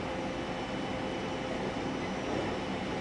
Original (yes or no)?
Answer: yes